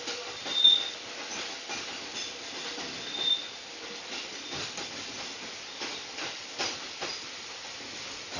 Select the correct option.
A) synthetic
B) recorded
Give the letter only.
B